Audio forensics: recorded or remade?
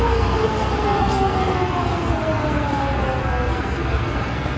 remade